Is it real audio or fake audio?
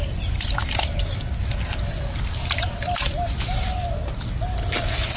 real